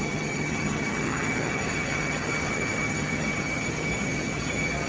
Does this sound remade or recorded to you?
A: remade